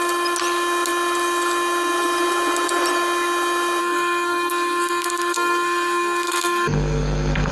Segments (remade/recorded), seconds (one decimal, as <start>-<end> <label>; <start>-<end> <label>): 0.0-3.8 recorded; 3.8-7.5 remade